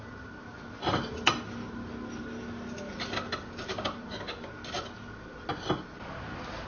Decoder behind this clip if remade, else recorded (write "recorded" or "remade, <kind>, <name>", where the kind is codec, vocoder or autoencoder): recorded